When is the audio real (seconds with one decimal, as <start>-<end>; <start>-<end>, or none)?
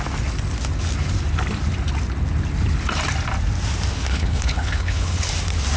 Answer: 0.0-4.1; 5.3-5.8